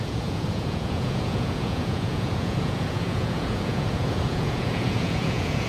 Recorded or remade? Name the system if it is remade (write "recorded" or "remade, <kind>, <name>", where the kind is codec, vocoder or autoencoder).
remade, vocoder, Vocos